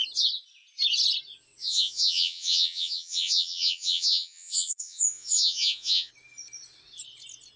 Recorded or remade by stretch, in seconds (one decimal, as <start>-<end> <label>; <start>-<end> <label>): 0.0-1.6 recorded; 1.6-6.1 remade; 6.1-7.6 recorded